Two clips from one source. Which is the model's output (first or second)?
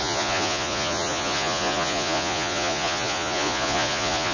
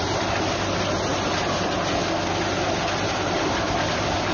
first